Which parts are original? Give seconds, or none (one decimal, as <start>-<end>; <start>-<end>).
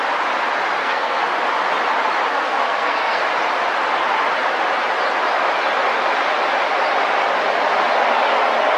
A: 0.0-0.8; 1.4-2.3; 3.2-8.8